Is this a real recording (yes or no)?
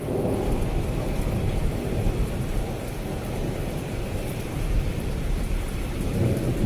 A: yes